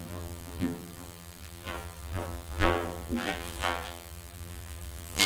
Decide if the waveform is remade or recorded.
remade